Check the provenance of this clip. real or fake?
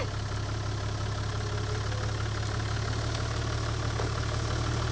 real